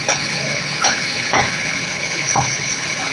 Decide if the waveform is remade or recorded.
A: remade